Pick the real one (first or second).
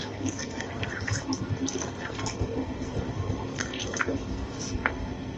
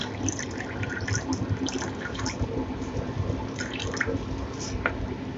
second